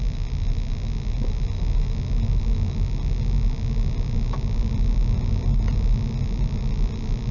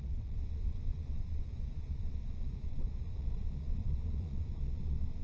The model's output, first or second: second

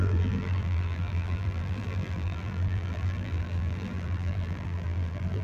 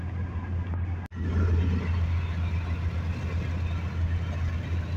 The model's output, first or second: first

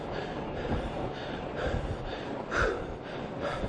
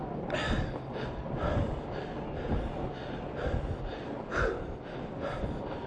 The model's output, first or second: first